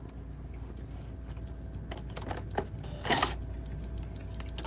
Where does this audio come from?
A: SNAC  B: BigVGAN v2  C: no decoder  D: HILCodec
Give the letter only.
C